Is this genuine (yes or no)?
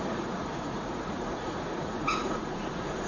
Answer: no